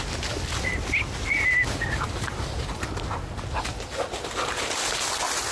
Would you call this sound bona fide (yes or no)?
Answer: yes